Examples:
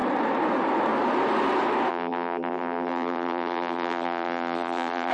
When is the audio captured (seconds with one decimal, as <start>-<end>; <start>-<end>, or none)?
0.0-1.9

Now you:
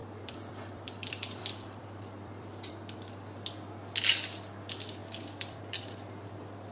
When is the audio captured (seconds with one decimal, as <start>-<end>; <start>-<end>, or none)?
2.7-5.0; 5.6-6.7

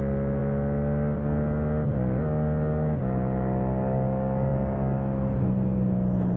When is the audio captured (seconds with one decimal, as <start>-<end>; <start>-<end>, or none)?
0.0-6.4

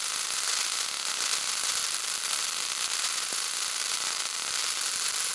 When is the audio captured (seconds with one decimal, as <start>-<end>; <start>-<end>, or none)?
0.0-1.8; 3.0-3.8

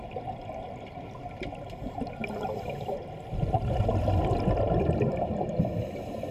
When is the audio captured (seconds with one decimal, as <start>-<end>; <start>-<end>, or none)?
0.0-2.2; 5.6-6.3